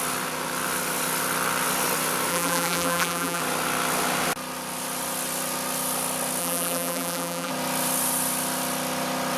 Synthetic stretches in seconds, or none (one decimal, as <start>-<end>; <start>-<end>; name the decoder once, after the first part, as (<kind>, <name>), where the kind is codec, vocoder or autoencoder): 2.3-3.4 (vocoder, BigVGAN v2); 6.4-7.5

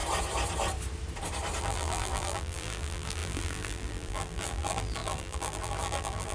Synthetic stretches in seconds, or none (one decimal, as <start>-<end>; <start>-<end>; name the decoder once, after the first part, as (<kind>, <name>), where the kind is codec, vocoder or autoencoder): 1.6-6.3 (vocoder, BigVGAN v2)

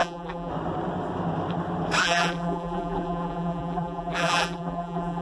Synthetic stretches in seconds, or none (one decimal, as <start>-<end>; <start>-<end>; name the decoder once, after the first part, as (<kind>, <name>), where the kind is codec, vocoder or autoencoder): 0.0-0.5 (vocoder, BigVGAN v2); 2.0-5.2

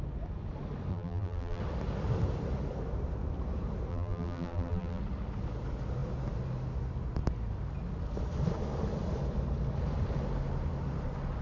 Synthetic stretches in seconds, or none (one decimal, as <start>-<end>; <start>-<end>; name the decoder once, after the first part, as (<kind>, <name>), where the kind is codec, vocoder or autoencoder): 0.9-1.6 (vocoder, BigVGAN v2); 3.9-5.0

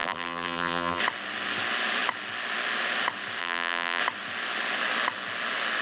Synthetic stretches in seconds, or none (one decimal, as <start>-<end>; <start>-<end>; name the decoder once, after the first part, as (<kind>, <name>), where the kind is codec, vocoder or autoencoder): 0.0-1.0 (vocoder, BigVGAN v2); 3.4-4.0

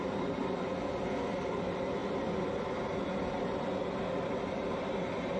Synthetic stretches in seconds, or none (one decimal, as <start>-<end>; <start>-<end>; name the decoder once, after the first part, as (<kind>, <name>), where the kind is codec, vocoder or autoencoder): 0.0-5.4 (vocoder, BigVGAN v2)

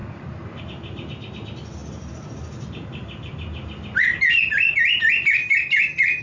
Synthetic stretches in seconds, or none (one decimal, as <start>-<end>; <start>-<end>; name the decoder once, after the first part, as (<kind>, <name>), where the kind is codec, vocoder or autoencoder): 0.0-0.6 (vocoder, BigVGAN v2)

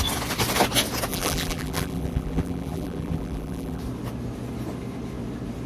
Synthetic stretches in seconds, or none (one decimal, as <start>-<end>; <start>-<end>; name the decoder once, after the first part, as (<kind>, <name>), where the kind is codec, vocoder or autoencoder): 1.1-3.8 (vocoder, BigVGAN v2)